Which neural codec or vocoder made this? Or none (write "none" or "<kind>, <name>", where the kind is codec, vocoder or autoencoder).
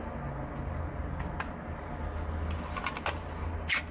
none